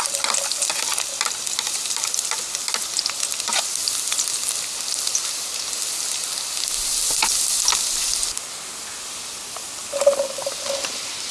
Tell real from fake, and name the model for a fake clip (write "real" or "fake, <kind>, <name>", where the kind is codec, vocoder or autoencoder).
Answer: real